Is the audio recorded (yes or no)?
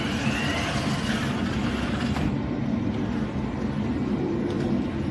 yes